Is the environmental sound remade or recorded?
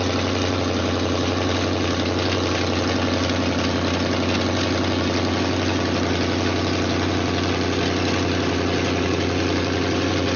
recorded